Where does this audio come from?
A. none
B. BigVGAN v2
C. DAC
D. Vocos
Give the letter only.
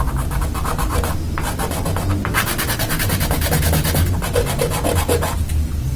A